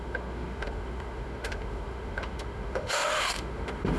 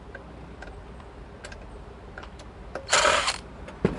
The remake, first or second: first